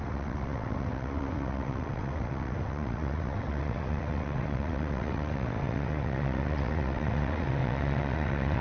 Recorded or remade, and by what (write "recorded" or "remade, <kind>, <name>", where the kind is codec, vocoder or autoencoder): remade, vocoder, WaveNeXt